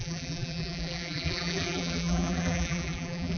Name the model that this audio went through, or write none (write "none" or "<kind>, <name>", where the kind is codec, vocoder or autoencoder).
vocoder, BigVGAN v2